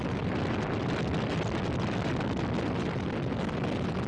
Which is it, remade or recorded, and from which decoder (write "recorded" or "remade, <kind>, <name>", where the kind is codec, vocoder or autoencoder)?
recorded